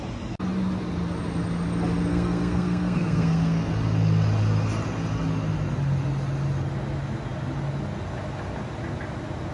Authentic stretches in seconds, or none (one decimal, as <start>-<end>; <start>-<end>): 0.0-2.1; 3.7-9.5